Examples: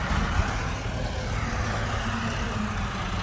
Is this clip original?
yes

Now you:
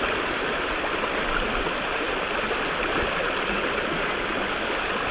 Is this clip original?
yes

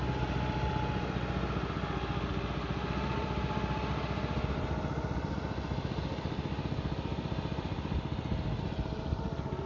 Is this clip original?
yes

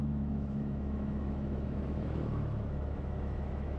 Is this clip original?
no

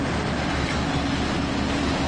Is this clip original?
yes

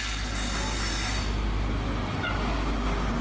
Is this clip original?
yes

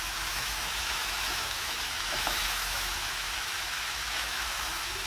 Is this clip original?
no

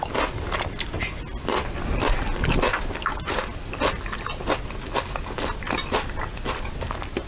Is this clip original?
yes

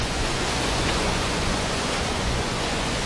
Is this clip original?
no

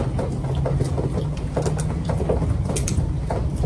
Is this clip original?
yes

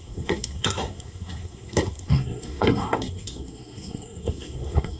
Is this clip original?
no